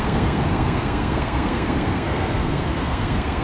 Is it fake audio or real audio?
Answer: fake